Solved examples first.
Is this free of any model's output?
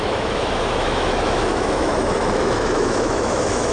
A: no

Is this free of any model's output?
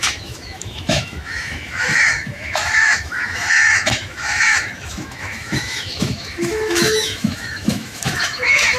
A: no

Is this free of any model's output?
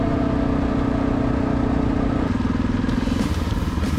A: yes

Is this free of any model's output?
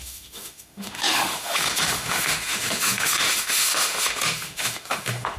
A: no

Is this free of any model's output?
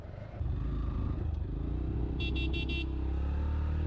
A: yes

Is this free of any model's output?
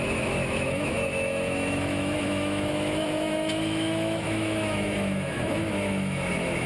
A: no